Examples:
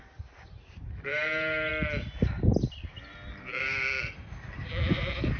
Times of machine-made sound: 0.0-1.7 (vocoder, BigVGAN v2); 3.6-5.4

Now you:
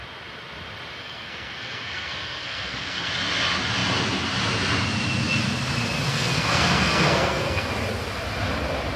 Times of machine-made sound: 1.0-3.1 (codec, SNAC); 6.1-7.7

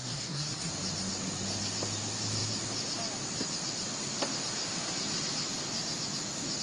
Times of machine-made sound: 0.0-0.7 (codec, SNAC)

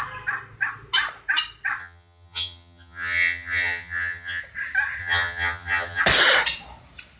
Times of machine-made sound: 1.8-4.4 (vocoder, HiFi-GAN); 5.0-6.0

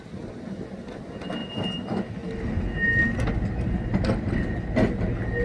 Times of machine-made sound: none

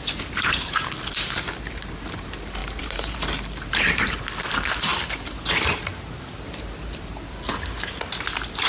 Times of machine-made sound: 2.6-4.2 (vocoder, BigVGAN v2)